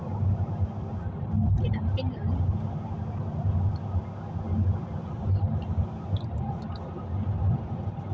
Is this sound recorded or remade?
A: recorded